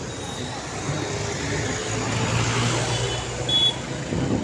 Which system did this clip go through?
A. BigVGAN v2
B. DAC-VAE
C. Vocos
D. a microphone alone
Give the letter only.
D